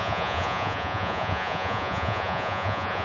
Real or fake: fake